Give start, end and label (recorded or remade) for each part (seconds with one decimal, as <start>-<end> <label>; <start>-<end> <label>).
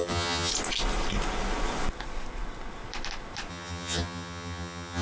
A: 0.0-0.5 remade; 0.5-3.5 recorded; 3.5-5.0 remade